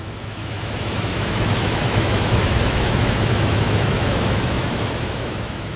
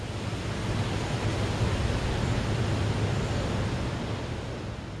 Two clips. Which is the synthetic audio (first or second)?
first